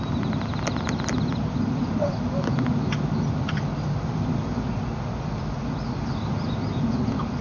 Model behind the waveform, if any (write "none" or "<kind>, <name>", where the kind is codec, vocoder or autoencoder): none